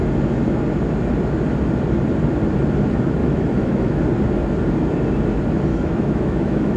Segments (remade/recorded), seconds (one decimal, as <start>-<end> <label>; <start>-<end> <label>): 0.0-3.2 recorded; 3.2-4.0 remade; 4.0-5.7 recorded; 5.7-6.8 remade